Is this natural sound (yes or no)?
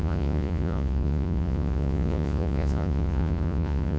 no